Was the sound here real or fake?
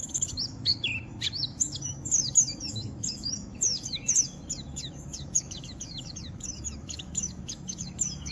fake